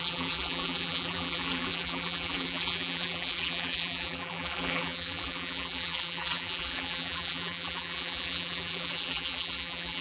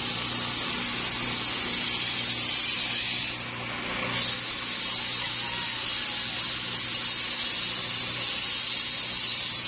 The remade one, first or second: first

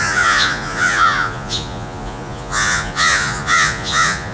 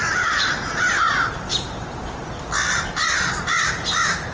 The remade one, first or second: first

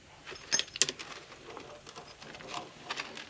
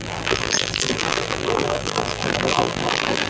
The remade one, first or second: second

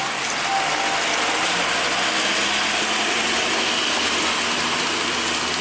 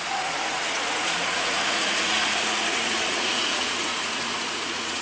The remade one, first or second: second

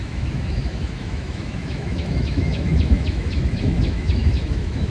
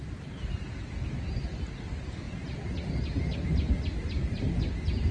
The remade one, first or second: first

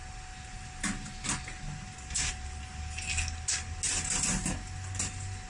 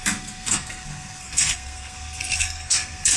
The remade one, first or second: second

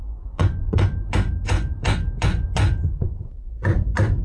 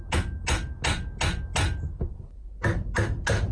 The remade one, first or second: first